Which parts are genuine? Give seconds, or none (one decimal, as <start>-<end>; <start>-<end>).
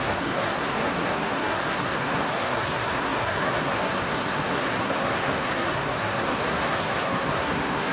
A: none